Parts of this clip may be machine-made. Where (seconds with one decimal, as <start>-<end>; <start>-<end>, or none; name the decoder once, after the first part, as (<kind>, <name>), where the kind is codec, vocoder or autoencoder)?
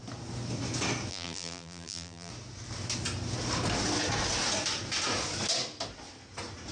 1.1-2.3 (vocoder, BigVGAN v2)